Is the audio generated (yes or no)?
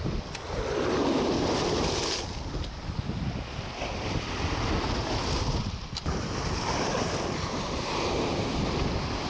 no